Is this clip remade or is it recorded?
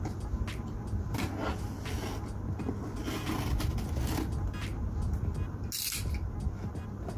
recorded